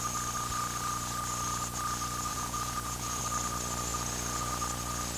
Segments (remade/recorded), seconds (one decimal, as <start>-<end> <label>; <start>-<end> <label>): 0.0-2.3 recorded; 2.3-3.2 remade; 3.2-3.9 recorded; 3.9-4.5 remade; 4.5-5.2 recorded